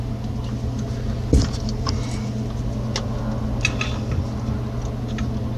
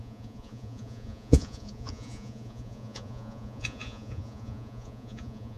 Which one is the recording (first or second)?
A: first